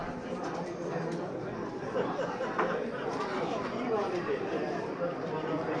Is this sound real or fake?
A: fake